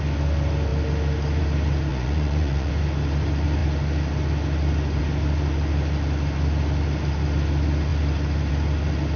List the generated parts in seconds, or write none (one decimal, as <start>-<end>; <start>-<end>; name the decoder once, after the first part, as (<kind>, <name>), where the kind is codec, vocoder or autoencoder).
1.9-2.7 (vocoder, Vocos)